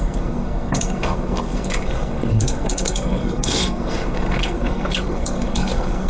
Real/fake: fake